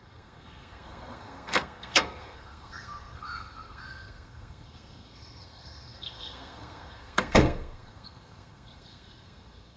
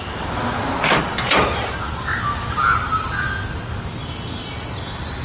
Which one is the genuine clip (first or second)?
second